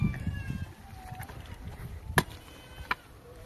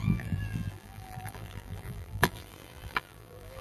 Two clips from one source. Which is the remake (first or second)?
second